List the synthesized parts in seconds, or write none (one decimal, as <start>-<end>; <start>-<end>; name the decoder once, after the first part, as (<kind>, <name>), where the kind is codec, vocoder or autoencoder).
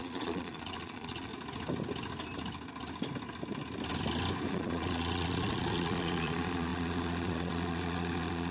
0.0-1.3 (vocoder, Vocos); 4.5-8.5